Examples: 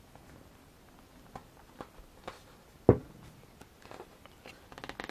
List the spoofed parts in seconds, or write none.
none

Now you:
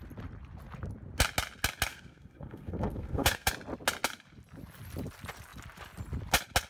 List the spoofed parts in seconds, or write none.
1.9-3.5 (codec, SNAC)

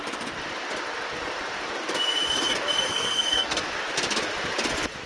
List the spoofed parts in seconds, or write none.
2.9-3.6 (codec, SNAC)

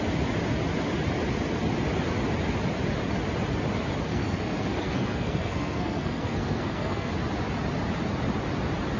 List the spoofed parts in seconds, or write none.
4.1-7.1 (codec, SNAC)